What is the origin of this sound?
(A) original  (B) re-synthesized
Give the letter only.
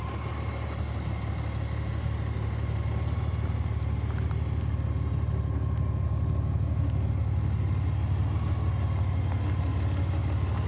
A